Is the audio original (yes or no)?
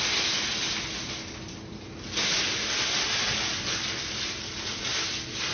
yes